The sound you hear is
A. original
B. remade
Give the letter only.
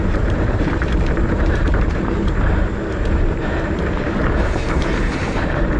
B